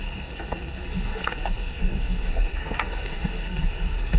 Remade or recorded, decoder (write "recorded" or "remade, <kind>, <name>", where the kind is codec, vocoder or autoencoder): remade, codec, SNAC